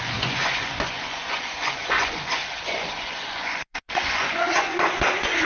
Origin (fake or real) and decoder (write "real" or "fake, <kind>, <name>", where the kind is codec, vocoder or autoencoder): fake, vocoder, Vocos